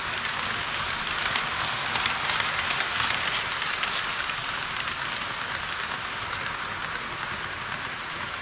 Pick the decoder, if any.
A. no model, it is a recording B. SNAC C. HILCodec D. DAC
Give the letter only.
A